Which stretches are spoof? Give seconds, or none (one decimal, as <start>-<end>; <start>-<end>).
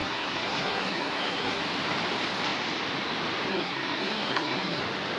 0.0-1.6; 3.5-4.8